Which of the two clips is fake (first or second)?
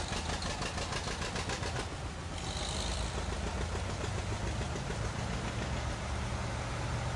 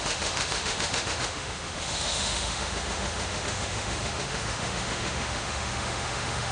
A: second